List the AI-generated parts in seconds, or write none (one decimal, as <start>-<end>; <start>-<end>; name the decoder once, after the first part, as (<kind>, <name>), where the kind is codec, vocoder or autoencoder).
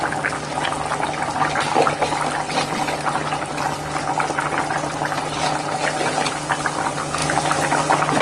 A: none